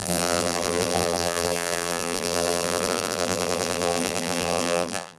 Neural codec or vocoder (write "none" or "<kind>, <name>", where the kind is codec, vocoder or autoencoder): vocoder, BigVGAN v2